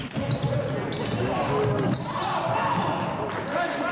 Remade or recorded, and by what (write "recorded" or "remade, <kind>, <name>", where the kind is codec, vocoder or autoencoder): recorded